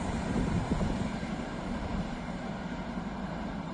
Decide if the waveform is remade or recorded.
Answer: remade